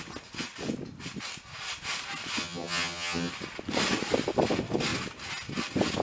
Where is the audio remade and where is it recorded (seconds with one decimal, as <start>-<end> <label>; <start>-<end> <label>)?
0.0-2.4 recorded; 2.4-3.3 remade; 3.3-6.0 recorded